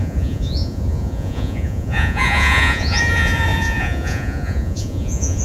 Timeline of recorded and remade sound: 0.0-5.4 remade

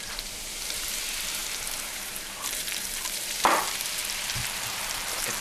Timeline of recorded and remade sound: 0.0-5.4 remade

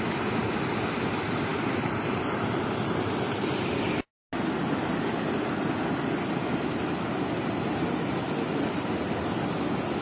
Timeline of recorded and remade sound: 0.0-10.0 recorded